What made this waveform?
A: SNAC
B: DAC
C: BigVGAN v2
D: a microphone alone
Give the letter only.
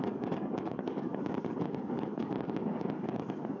B